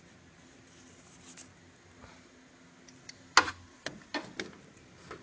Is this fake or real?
real